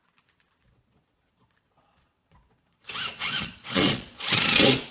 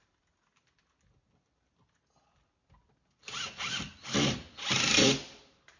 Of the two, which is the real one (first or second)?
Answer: second